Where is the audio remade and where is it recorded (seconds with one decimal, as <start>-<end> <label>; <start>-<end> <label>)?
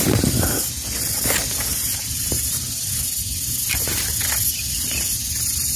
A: 0.0-1.7 recorded; 1.7-2.9 remade; 2.9-5.8 recorded